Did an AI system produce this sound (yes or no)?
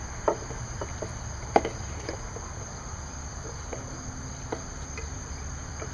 no